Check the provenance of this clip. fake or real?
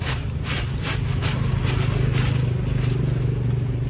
real